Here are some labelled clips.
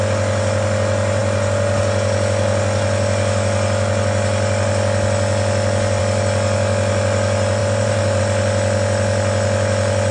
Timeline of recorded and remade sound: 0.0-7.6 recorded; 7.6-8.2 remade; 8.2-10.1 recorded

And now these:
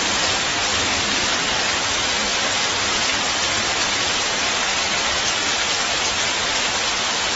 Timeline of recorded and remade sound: 0.0-7.4 recorded

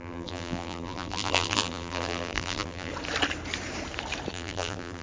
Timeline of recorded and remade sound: 0.0-2.9 remade; 2.9-4.3 recorded; 4.3-5.0 remade

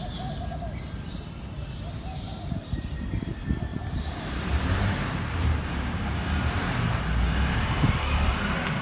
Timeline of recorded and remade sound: 0.0-3.7 recorded; 3.7-7.0 remade; 7.0-8.8 recorded

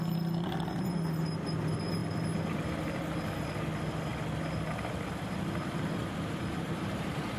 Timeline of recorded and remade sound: 0.0-6.0 recorded; 6.0-7.4 remade

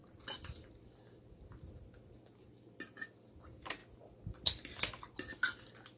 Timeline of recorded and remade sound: 0.0-6.0 recorded

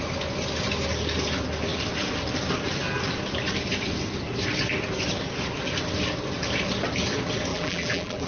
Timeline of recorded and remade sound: 0.0-7.5 recorded; 7.5-8.3 remade